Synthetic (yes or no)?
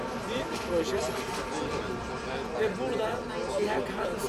no